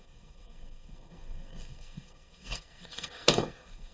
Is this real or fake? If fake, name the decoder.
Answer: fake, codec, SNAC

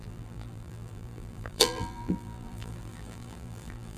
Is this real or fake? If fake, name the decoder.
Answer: fake, vocoder, BigVGAN v2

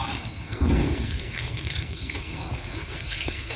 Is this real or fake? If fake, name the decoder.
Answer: fake, codec, SNAC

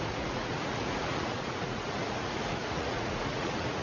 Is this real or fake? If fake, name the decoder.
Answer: fake, vocoder, Vocos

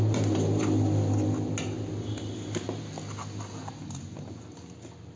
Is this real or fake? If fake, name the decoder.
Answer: real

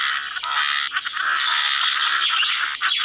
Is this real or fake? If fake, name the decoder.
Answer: real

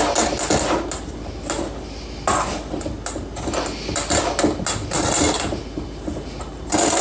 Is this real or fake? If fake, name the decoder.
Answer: real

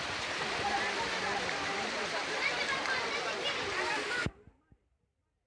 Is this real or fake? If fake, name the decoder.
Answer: fake, vocoder, BigVGAN v2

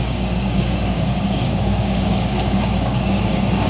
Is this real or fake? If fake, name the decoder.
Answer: fake, codec, DAC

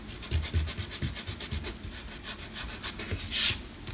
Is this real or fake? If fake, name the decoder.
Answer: real